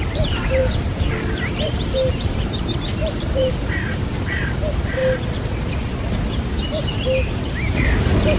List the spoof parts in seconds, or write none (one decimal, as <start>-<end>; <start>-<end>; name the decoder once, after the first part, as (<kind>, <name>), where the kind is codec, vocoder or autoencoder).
0.0-0.6 (vocoder, BigVGAN v2); 1.2-5.0; 6.3-8.4